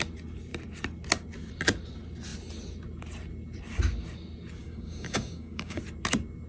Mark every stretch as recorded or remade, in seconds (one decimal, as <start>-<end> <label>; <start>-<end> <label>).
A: 0.0-4.6 recorded; 4.6-5.8 remade; 5.8-6.5 recorded